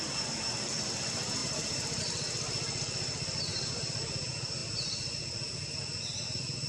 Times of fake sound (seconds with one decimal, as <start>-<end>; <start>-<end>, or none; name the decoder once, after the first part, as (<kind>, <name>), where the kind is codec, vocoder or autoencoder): 1.4-2.0 (vocoder, BigVGAN v2); 3.5-4.1